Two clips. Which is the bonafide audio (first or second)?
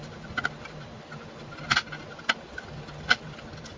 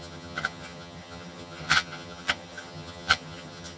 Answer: first